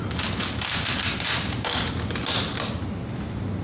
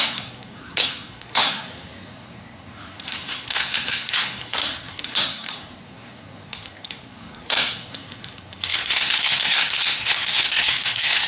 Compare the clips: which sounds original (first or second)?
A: first